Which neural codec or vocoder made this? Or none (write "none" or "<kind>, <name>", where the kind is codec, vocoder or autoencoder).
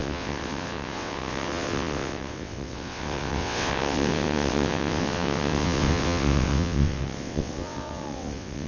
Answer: vocoder, WaveNeXt